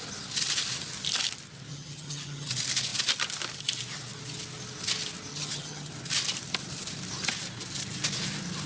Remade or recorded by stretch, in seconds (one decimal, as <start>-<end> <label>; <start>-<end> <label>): 0.0-1.7 recorded; 1.7-2.5 remade; 2.5-5.3 recorded; 5.3-5.9 remade; 5.9-8.7 recorded